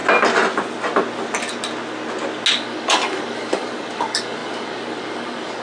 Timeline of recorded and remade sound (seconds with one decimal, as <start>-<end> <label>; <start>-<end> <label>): 0.0-2.5 recorded; 2.5-5.6 remade